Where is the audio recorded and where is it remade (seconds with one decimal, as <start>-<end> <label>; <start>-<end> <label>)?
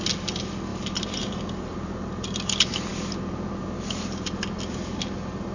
0.0-0.7 recorded; 0.7-1.3 remade; 1.3-5.5 recorded